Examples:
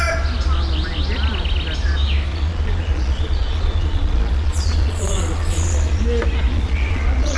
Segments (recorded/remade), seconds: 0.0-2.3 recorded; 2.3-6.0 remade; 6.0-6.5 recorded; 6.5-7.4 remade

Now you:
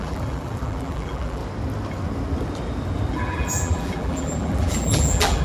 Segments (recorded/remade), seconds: 0.0-1.4 remade; 1.4-3.1 recorded; 3.1-5.4 remade

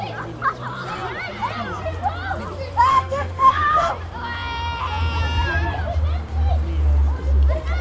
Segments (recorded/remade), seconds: 0.0-2.9 recorded; 2.9-3.9 remade; 3.9-7.8 recorded